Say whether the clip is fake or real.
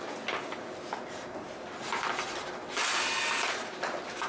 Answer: real